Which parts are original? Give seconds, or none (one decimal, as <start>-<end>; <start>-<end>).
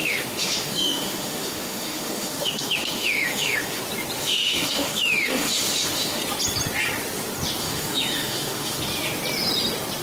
3.8-4.2; 6.2-7.6; 8.8-10.0